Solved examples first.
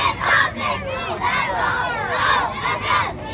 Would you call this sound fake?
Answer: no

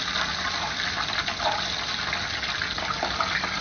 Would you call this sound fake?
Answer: no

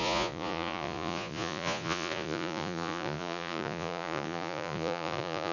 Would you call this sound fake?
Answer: yes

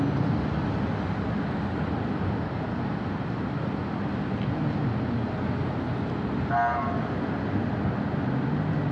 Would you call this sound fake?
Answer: no